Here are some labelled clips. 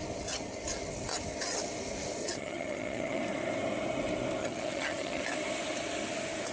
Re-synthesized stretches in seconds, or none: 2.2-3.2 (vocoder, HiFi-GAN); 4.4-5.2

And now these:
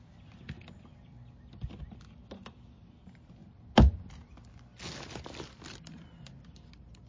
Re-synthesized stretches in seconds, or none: none

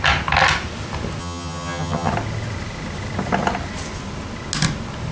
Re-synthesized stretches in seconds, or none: 1.2-2.1 (vocoder, HiFi-GAN)

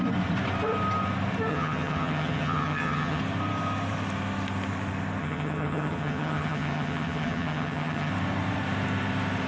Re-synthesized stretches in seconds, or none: 1.5-3.2 (vocoder, HiFi-GAN); 5.2-8.1

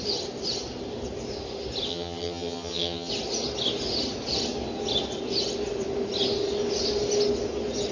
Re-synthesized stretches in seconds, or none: 1.9-3.1 (vocoder, HiFi-GAN)

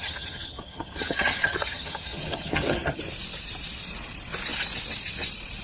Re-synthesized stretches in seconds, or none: 0.0-3.0 (vocoder, HiFi-GAN)